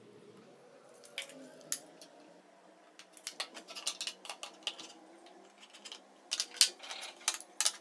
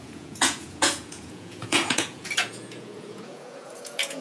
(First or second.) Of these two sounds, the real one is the first